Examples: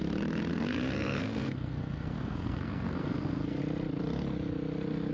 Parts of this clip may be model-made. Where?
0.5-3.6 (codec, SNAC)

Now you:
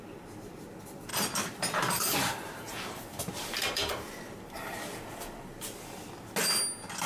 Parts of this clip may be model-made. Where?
1.1-4.5 (vocoder, BigVGAN v2)